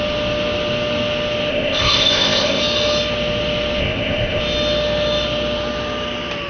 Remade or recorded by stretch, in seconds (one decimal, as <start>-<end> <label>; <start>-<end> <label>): 0.0-1.5 recorded; 1.5-2.6 remade; 2.6-3.8 recorded; 3.8-4.4 remade; 4.4-6.5 recorded